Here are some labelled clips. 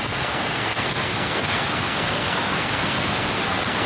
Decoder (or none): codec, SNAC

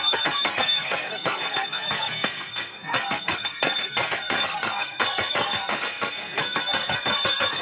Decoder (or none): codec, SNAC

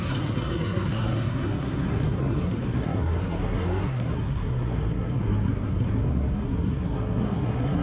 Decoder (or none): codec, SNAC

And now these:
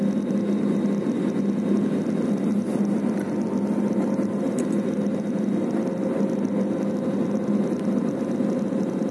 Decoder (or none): none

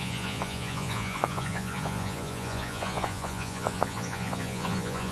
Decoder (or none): vocoder, Vocos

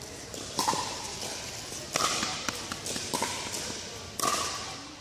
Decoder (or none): none